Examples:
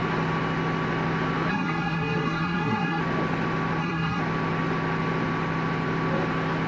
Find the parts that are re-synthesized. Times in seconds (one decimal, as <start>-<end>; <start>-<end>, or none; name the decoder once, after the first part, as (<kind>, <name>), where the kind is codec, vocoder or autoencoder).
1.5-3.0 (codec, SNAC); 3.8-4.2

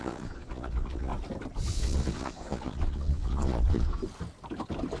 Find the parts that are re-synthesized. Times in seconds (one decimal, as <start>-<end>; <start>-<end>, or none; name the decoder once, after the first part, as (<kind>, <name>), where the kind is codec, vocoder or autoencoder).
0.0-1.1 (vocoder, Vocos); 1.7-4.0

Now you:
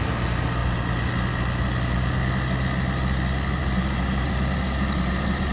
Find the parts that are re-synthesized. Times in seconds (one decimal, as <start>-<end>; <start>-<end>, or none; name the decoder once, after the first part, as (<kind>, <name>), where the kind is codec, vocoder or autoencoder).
3.6-5.5 (vocoder, BigVGAN v2)

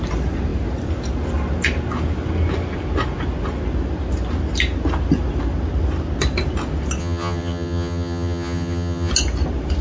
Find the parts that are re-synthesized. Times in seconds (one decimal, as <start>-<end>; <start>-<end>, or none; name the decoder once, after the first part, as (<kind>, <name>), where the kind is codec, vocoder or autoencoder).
7.0-9.1 (vocoder, HiFi-GAN)

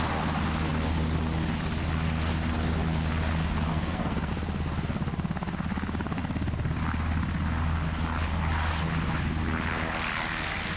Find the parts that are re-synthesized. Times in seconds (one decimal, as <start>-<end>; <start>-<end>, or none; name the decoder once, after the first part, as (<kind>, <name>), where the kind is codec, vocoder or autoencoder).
3.7-4.3 (codec, SNAC)

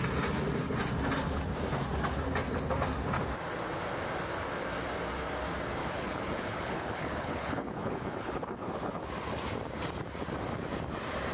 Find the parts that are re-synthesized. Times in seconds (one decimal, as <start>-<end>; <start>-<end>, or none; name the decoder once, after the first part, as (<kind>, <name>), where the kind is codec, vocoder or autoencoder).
5.8-9.1 (codec, HILCodec)

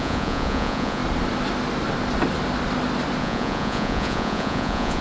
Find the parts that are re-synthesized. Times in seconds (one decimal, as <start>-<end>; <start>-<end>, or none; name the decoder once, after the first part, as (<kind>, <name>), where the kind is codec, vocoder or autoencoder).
0.0-1.0 (vocoder, Vocos); 3.2-5.0